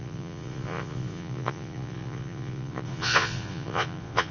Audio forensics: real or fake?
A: fake